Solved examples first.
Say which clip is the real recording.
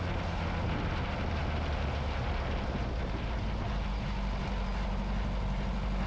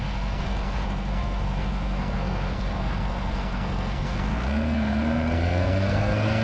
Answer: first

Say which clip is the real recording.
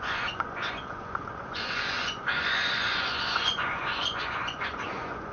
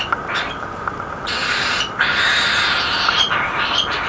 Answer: second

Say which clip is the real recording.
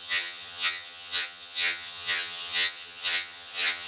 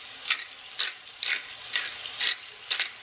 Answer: second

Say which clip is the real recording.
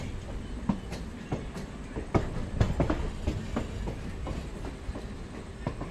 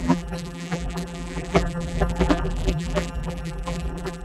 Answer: first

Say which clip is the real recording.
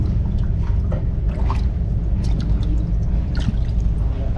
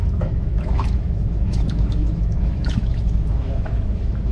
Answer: first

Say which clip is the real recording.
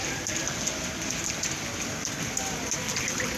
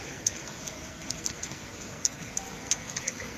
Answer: first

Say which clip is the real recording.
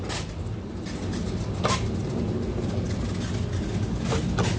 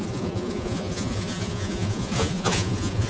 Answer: first